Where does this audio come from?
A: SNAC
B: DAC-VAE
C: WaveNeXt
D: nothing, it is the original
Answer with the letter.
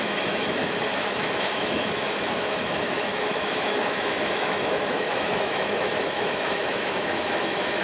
B